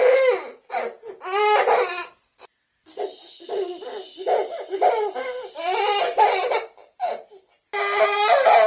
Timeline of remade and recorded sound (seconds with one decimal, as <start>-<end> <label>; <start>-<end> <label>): 0.0-8.7 recorded